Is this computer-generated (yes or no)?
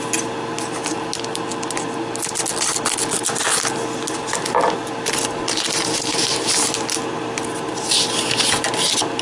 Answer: no